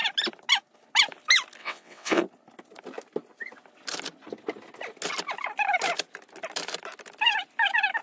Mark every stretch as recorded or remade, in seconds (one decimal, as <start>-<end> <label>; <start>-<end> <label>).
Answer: 0.0-1.6 recorded; 1.6-2.2 remade; 2.2-8.0 recorded